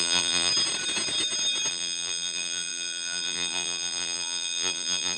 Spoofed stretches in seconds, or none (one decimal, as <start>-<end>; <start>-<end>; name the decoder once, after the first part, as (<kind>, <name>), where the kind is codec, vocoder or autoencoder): 0.0-0.5 (vocoder, BigVGAN v2); 1.7-5.2